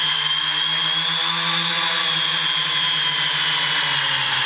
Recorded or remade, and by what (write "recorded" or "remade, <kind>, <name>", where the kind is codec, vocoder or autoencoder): recorded